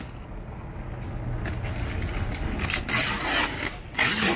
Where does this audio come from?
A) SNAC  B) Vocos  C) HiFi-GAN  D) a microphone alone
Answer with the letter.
D